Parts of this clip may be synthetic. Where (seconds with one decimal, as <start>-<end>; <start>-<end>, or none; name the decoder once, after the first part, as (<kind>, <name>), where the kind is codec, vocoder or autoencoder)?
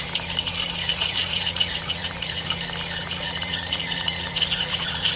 0.9-2.5 (vocoder, Vocos); 3.0-5.2